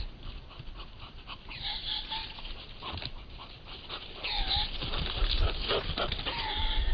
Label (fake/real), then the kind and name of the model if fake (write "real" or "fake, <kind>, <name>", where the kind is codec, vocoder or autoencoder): real